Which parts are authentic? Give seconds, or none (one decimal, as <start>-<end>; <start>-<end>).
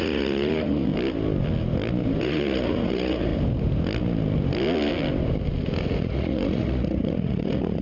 0.9-2.2; 3.3-6.0